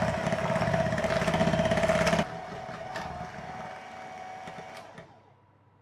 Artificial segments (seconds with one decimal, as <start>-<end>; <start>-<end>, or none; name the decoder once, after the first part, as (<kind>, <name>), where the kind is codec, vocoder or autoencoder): none